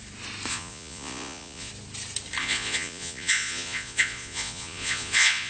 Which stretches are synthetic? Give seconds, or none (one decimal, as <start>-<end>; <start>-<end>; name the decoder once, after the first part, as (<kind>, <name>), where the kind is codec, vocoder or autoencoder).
0.5-1.7 (vocoder, Vocos); 2.4-5.5